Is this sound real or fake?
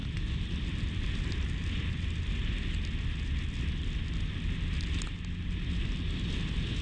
real